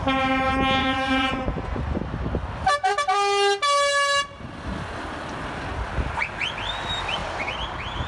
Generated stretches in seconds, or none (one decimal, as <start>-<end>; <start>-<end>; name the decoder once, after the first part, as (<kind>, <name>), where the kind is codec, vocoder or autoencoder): 0.8-2.0 (vocoder, Vocos)